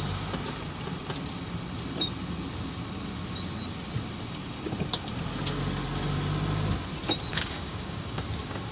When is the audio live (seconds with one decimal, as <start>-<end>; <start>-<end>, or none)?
0.0-7.3; 8.2-8.7